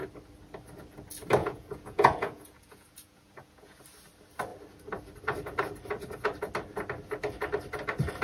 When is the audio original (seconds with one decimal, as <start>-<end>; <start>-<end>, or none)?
0.0-1.4; 3.8-8.2